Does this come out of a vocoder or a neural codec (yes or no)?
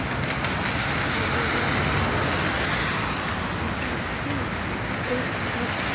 no